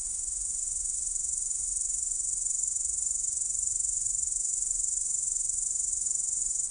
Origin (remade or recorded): remade